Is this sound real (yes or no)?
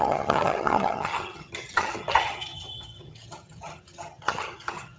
no